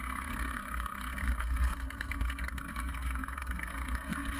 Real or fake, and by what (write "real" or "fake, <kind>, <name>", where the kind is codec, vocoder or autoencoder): fake, codec, SNAC